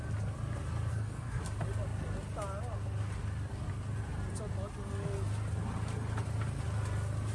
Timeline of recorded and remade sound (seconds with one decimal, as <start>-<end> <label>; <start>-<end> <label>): 0.0-0.9 recorded; 0.9-1.4 remade; 1.4-7.3 recorded